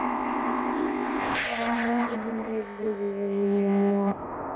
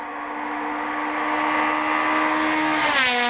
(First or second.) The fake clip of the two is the first